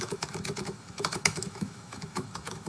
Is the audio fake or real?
fake